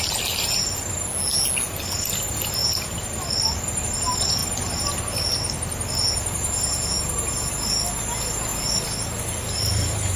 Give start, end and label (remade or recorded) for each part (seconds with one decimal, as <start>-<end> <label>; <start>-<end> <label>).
0.0-2.6 recorded; 2.6-3.8 remade; 3.8-10.2 recorded